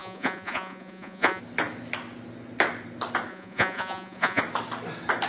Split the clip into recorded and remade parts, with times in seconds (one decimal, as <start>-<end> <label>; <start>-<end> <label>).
0.0-1.4 remade; 1.4-3.3 recorded; 3.3-4.4 remade; 4.4-5.3 recorded